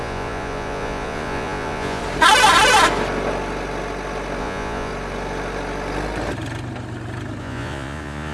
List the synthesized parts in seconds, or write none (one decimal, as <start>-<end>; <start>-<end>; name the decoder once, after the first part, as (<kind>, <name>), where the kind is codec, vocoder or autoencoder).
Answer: 0.0-2.0 (vocoder, Vocos); 4.4-4.9; 7.4-8.3